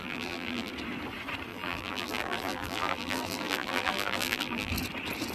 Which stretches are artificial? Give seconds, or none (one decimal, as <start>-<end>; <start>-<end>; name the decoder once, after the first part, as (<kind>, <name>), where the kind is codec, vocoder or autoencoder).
0.0-0.7 (vocoder, BigVGAN v2); 1.5-4.7